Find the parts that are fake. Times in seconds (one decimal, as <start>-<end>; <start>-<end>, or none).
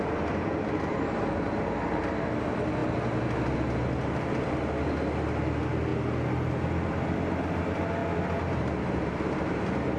none